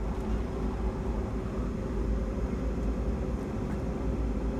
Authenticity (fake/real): real